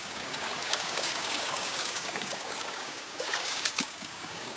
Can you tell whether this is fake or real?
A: fake